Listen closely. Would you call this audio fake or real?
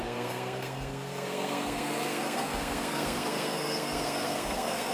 fake